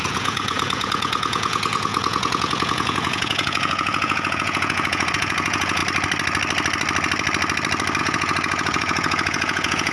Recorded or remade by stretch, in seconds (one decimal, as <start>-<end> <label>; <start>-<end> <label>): 0.0-5.8 remade; 5.8-8.0 recorded; 8.0-9.9 remade